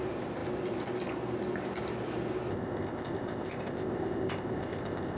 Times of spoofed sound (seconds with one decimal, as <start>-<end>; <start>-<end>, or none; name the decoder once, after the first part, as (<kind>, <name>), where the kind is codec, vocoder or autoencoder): 2.5-5.2 (codec, ZipCodec)